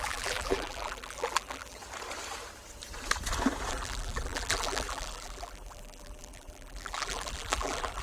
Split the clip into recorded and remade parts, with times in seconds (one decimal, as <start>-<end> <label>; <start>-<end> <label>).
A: 0.0-1.8 remade; 1.8-3.7 recorded; 3.7-8.0 remade